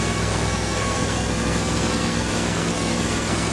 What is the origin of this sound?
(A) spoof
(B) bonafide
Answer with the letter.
A